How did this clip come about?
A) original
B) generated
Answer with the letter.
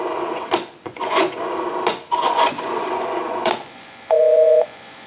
B